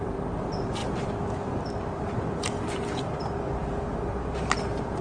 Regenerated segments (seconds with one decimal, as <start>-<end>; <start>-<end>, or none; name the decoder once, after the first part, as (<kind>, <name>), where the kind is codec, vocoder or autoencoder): 0.0-0.8 (vocoder, BigVGAN v2); 3.8-5.0